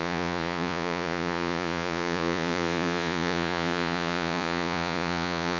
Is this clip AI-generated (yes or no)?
yes